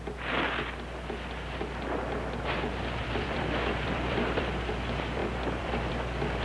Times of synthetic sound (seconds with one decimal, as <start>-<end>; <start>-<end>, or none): 3.0-4.7; 5.2-5.9